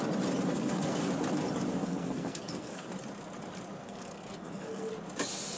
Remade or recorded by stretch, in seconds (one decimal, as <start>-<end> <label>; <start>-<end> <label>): 0.0-0.5 recorded; 0.5-1.0 remade; 1.0-1.8 recorded; 1.8-2.9 remade; 2.9-3.8 recorded; 3.8-4.9 remade; 4.9-5.6 recorded